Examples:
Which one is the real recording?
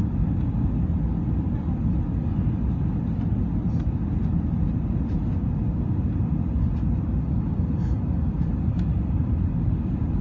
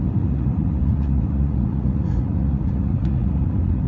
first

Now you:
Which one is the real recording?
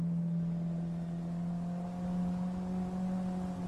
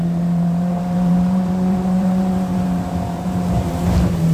first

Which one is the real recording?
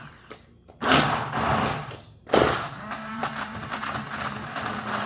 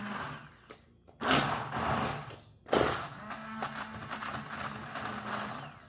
second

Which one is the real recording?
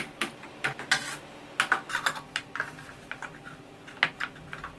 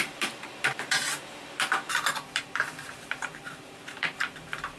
first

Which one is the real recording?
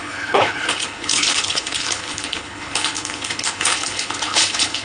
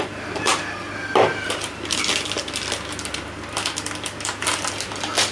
second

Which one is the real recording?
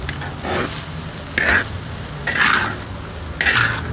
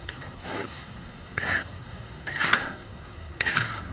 first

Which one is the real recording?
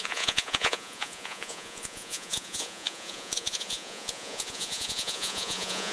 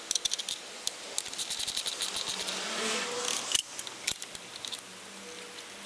second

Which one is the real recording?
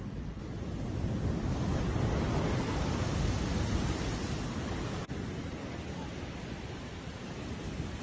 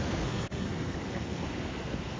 first